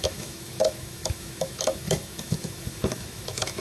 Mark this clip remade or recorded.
remade